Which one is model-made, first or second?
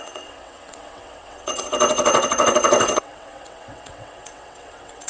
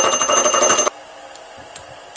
first